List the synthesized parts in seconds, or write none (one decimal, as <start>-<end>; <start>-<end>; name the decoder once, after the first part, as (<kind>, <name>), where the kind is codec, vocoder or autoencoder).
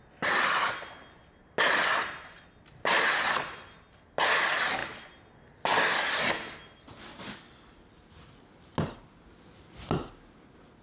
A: none